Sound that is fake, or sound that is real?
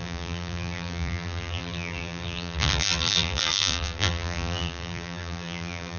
fake